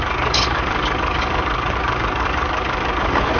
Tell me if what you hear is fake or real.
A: fake